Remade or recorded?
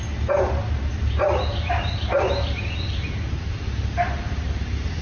recorded